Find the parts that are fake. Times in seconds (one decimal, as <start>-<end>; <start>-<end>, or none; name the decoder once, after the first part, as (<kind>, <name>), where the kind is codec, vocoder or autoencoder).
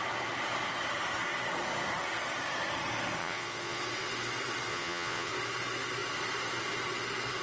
3.2-3.8 (vocoder, Vocos); 4.7-5.3